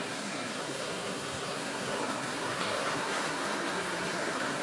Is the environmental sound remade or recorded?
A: remade